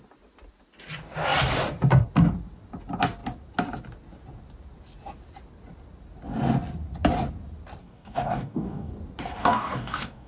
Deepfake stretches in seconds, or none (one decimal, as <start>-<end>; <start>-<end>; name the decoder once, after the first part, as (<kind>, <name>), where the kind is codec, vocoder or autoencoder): 7.8-8.9 (codec, DAC); 9.4-10.3